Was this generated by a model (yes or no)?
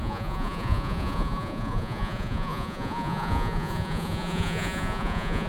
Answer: yes